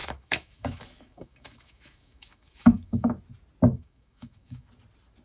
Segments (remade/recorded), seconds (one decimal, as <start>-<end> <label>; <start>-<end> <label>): 0.0-3.1 remade; 3.1-3.7 recorded; 3.7-4.7 remade; 4.7-5.2 recorded

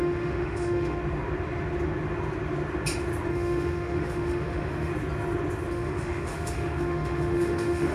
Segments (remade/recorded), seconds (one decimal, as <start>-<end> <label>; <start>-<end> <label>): 0.0-1.0 remade; 1.0-3.3 recorded; 3.3-4.9 remade; 4.9-5.7 recorded; 5.7-7.9 remade